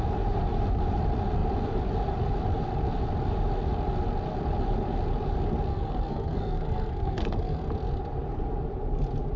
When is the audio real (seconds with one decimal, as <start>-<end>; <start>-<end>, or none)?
0.0-5.7; 7.7-9.4